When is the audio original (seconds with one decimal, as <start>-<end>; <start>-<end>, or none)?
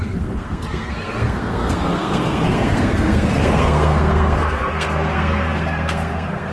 none